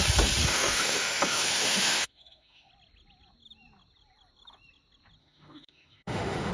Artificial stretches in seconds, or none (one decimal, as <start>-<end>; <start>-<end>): 0.4-2.7; 5.2-6.5